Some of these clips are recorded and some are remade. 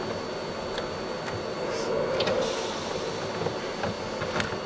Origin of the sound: recorded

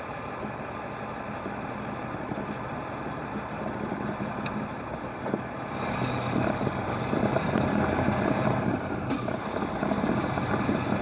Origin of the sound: recorded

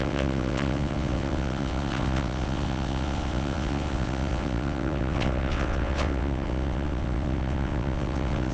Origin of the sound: remade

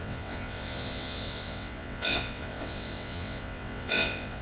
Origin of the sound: remade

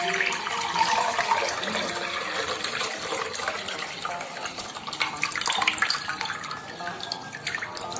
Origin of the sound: recorded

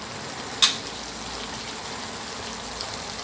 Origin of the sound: recorded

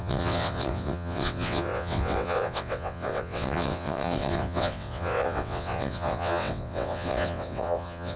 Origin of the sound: remade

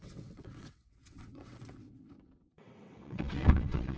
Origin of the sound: remade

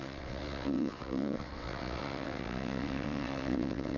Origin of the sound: remade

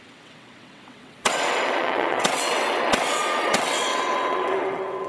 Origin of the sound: remade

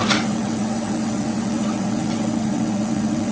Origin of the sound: remade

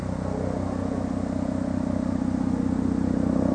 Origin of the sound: recorded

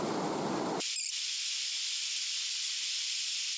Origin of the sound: recorded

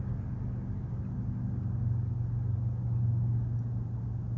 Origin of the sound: recorded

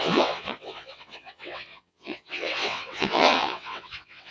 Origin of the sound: remade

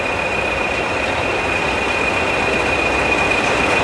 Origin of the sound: recorded